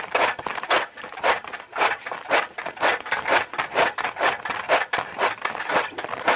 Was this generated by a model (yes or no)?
no